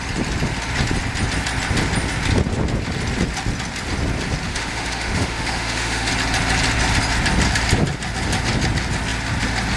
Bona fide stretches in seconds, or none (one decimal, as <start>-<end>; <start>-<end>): 0.0-4.5; 6.1-9.8